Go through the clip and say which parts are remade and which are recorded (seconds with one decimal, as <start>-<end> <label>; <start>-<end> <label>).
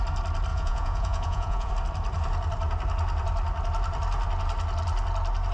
0.0-0.5 recorded; 0.5-1.7 remade; 1.7-5.5 recorded